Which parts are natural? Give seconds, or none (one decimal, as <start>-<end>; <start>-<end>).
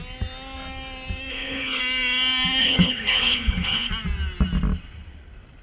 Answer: 0.0-1.3; 1.8-2.6; 3.9-5.6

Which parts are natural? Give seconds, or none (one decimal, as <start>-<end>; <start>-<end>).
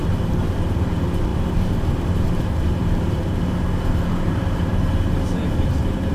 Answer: none